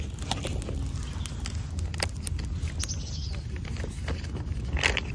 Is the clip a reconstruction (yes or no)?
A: no